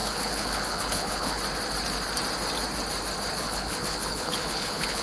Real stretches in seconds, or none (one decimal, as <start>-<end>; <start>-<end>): 1.4-3.4